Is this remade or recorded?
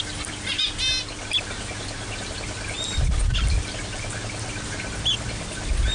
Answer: recorded